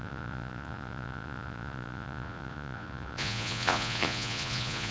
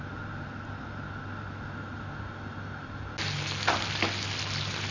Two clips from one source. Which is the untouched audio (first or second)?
second